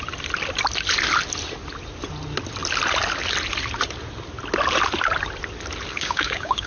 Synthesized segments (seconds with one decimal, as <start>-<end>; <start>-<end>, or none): 5.9-6.7